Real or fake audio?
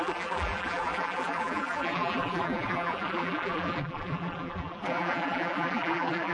fake